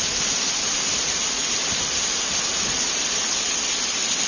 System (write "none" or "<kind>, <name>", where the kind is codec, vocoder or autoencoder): none